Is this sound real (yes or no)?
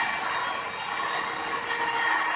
yes